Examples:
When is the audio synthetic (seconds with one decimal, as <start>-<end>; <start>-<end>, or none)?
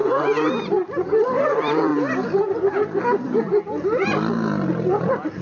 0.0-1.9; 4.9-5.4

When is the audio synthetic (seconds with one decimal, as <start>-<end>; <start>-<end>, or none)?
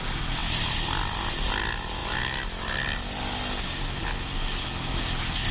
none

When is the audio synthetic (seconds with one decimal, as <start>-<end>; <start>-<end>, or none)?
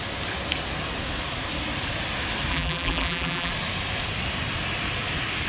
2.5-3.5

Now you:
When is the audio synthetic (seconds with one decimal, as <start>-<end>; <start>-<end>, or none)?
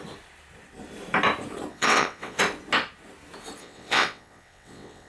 1.7-2.4; 3.6-5.1